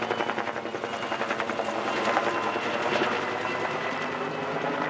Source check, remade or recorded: recorded